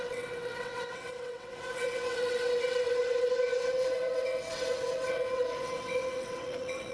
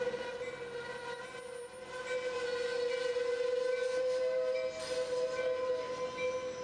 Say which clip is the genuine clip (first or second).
second